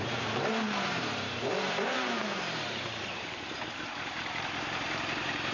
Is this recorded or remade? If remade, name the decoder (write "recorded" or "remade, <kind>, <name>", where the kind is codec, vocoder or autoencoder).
remade, vocoder, BigVGAN v2